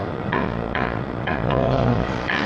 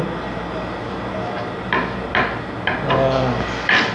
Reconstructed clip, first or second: first